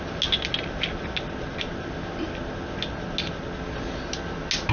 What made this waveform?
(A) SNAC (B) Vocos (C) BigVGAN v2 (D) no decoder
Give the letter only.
D